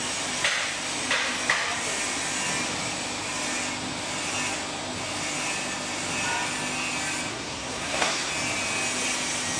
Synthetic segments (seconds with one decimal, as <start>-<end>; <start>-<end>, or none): 7.3-8.3